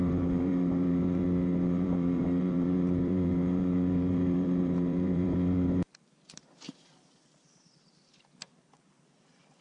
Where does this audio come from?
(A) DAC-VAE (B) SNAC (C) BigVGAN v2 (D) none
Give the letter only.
C